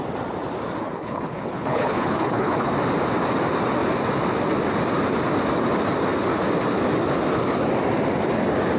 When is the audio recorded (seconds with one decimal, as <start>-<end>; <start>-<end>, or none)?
0.0-0.8; 2.7-8.8